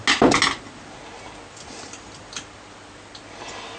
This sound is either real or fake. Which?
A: real